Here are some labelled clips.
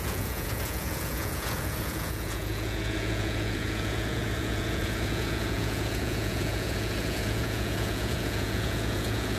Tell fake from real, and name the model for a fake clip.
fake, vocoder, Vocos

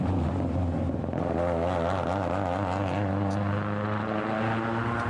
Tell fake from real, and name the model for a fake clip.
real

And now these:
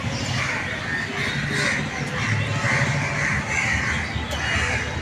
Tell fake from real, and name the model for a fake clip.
real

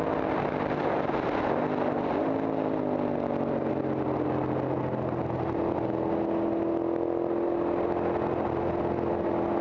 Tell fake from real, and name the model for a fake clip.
real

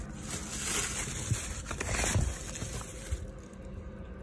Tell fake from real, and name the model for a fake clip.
real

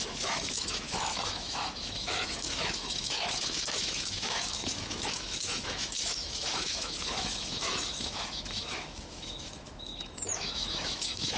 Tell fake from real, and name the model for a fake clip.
fake, autoencoder, DAC-VAE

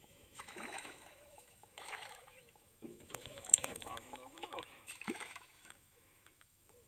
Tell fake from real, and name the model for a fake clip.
fake, autoencoder, DAC-VAE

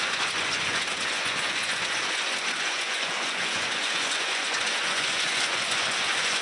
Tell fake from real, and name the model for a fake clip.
fake, vocoder, Vocos